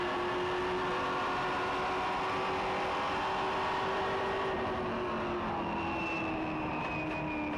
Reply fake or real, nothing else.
real